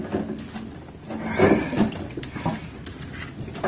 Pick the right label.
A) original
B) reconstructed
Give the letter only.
A